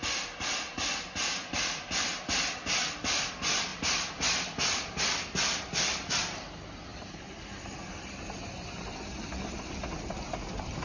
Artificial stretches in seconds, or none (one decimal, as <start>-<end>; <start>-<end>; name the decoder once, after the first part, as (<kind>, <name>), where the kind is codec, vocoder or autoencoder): 6.9-8.5 (vocoder, BigVGAN v2)